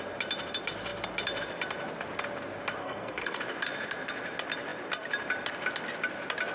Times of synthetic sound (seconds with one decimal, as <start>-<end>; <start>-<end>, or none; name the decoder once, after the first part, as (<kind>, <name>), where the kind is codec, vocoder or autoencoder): 2.8-3.4 (codec, SNAC)